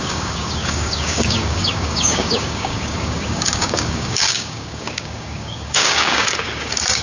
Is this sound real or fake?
fake